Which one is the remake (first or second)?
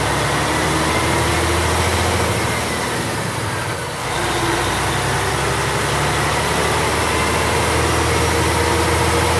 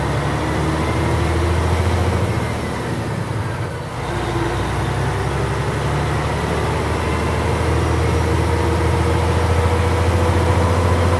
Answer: first